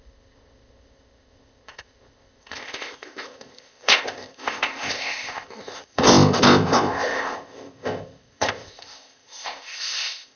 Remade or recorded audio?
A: remade